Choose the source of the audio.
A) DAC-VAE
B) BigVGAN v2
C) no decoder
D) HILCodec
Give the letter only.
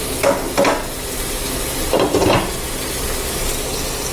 C